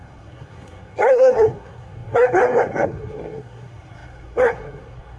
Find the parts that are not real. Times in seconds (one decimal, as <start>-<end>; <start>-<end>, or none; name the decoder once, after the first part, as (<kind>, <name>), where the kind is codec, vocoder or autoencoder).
0.0-5.2 (codec, SNAC)